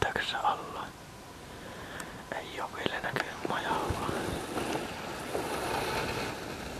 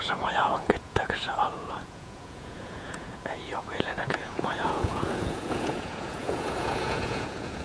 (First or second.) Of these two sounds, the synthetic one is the second